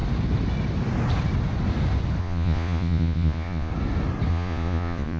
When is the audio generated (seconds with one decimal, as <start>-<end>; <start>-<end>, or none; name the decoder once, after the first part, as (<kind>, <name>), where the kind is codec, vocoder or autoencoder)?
2.2-3.7 (vocoder, Vocos); 4.3-5.2